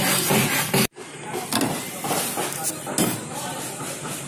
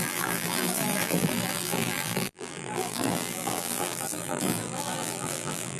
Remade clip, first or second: second